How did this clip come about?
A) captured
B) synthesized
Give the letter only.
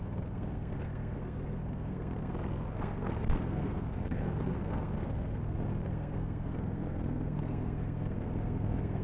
B